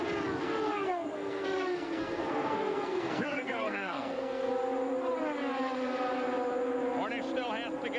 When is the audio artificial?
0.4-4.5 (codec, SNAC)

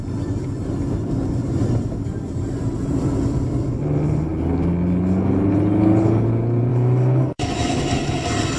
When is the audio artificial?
6.7-7.8 (autoencoder, DAC-VAE)